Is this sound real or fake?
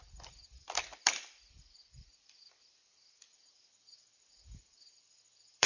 fake